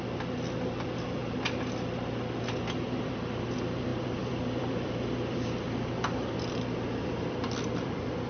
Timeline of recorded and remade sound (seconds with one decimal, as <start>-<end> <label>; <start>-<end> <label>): 0.0-1.2 remade; 1.2-3.0 recorded; 3.0-8.3 remade